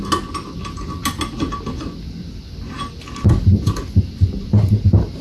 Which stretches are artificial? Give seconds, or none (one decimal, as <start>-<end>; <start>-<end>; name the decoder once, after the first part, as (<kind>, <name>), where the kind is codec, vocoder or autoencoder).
none